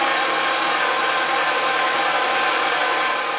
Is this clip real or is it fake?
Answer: real